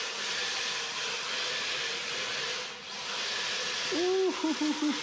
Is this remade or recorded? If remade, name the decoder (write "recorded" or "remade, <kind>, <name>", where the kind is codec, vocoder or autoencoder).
recorded